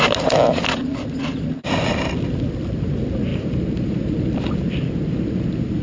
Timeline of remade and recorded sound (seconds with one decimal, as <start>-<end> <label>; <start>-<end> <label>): 0.0-3.3 recorded; 3.3-5.8 remade

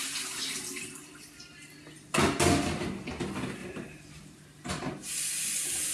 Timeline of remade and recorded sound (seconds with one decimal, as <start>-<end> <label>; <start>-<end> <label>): 0.0-3.6 recorded; 3.6-4.7 remade; 4.7-5.9 recorded

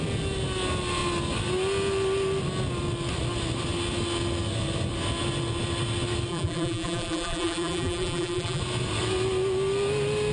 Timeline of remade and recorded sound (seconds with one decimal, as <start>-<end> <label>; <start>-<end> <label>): 0.0-6.3 recorded; 6.3-8.6 remade; 8.6-10.3 recorded

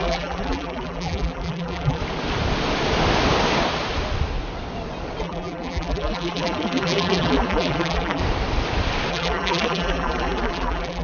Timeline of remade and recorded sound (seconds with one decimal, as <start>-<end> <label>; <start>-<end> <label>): 0.0-2.0 remade; 2.0-5.2 recorded; 5.2-8.2 remade; 8.2-9.1 recorded; 9.1-11.0 remade

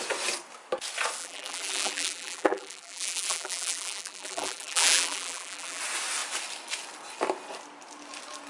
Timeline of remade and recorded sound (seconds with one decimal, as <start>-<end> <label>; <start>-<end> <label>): 0.0-1.2 recorded; 1.2-5.8 remade; 5.8-8.5 recorded

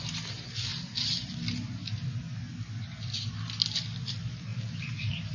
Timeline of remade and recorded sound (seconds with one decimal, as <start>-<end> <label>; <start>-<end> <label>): 0.0-0.7 recorded; 0.7-1.4 remade; 1.4-4.5 recorded; 4.5-5.3 remade